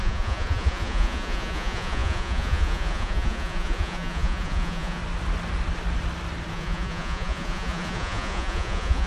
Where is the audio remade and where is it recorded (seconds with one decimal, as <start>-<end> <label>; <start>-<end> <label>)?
0.0-5.0 remade; 5.0-6.5 recorded; 6.5-9.1 remade